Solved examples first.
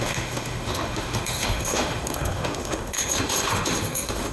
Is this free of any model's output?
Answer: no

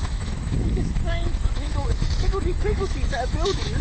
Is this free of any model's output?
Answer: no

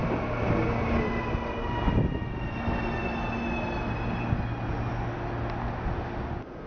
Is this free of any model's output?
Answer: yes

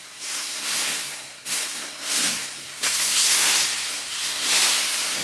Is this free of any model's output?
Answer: no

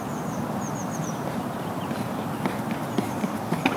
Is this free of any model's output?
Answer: yes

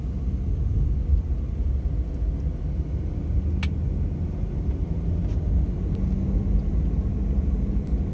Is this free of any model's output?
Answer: yes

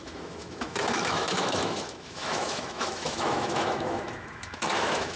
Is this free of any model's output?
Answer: no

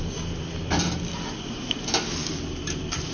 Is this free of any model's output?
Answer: yes